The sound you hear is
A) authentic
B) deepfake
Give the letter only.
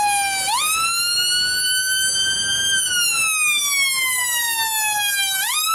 A